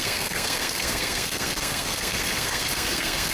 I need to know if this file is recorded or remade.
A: remade